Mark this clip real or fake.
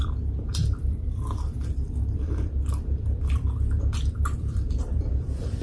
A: fake